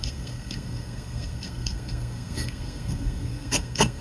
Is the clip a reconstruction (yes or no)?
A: yes